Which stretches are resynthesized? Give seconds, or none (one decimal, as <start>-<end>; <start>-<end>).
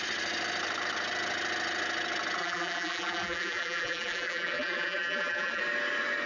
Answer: 2.4-5.6